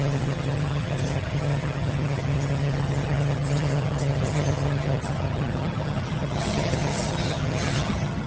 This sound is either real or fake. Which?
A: fake